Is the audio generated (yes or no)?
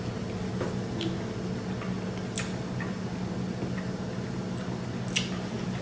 no